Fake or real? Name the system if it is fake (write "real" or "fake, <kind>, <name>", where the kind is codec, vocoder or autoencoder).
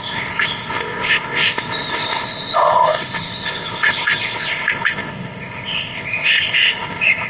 fake, codec, ZipCodec